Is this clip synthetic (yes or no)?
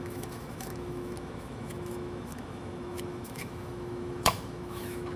yes